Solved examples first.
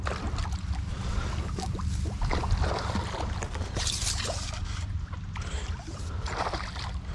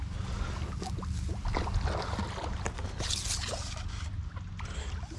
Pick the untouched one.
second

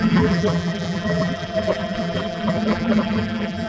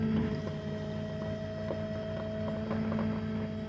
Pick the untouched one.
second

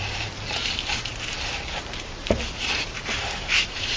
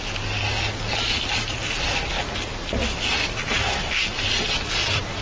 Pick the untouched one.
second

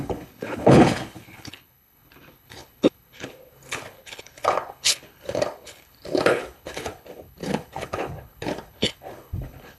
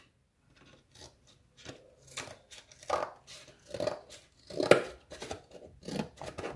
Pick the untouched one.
second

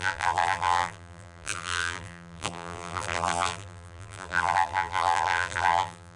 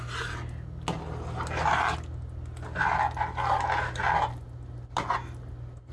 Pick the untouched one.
second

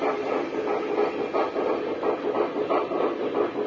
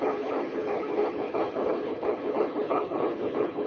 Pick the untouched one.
first